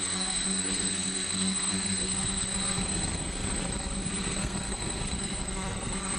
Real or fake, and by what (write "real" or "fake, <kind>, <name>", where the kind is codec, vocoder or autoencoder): fake, codec, SNAC